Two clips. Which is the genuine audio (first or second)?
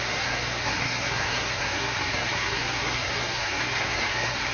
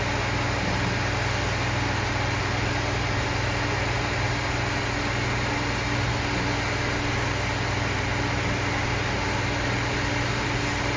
second